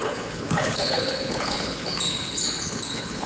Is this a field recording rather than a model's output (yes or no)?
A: no